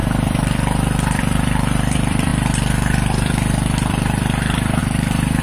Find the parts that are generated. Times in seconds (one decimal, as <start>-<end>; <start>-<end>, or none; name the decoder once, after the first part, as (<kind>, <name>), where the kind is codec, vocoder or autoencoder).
0.0-5.4 (vocoder, BigVGAN v2)